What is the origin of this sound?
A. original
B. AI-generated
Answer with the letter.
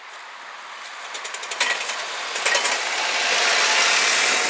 A